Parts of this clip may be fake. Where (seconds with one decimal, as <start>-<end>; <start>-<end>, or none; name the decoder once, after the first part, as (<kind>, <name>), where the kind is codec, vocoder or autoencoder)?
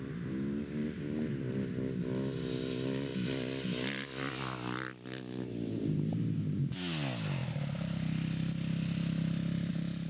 none